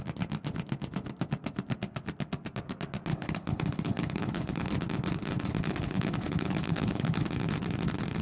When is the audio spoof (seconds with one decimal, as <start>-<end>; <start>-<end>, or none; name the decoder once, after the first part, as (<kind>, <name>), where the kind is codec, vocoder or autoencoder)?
3.1-4.7 (codec, HILCodec); 5.5-7.3